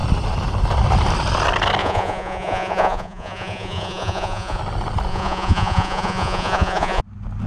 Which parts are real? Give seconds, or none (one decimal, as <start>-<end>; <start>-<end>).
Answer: 0.0-1.8; 4.6-5.1; 7.0-7.5